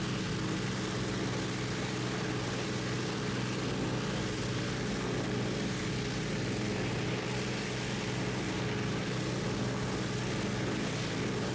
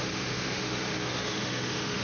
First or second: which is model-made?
second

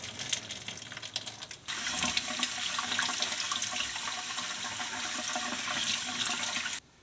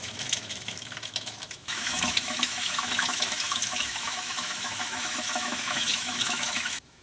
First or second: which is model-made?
second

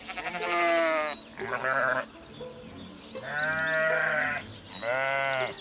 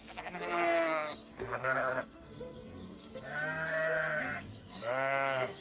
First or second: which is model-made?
second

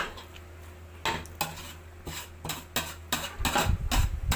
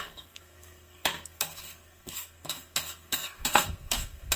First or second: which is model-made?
second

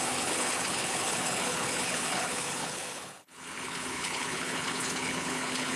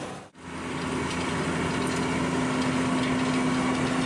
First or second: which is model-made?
first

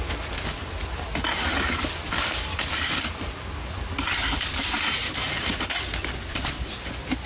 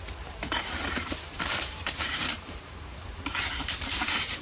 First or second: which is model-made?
second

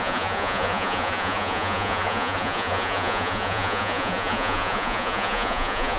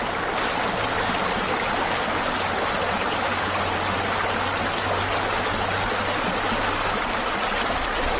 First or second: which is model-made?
first